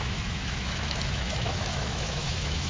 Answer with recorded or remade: remade